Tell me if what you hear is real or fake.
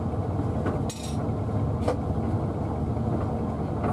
real